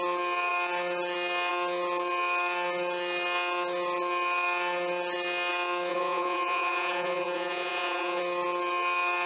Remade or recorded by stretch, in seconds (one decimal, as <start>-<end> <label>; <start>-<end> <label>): 0.0-5.9 recorded; 5.9-8.2 remade; 8.2-9.3 recorded